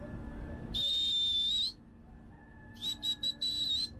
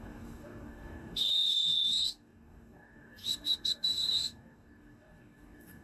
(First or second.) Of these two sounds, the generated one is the second